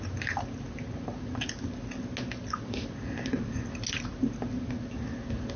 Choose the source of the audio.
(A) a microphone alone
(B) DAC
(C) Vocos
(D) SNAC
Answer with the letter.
A